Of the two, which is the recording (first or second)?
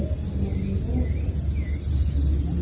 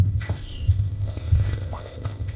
first